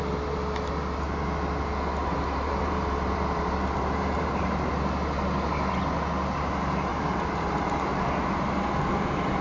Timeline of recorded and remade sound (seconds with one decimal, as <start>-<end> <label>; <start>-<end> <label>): 0.0-2.0 recorded; 2.0-4.7 remade; 4.7-6.9 recorded; 6.9-8.7 remade; 8.7-9.4 recorded